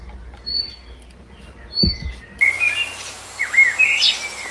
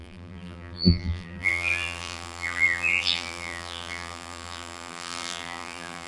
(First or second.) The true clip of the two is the first